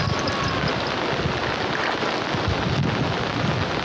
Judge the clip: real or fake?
real